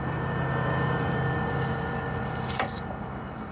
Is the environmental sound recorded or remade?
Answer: remade